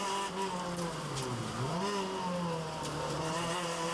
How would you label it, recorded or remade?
recorded